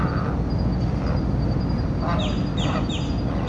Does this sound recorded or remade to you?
recorded